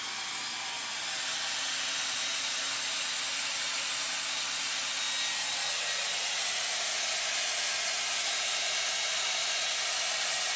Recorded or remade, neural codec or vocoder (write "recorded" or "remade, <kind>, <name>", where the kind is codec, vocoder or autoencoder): recorded